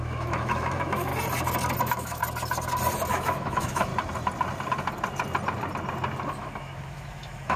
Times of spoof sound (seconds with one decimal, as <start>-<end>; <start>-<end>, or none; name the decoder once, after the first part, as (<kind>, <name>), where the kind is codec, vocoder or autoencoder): 0.0-1.1 (autoencoder, DAC-VAE); 1.8-2.2; 3.1-3.9; 6.3-7.6